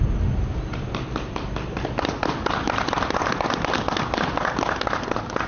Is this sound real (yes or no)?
yes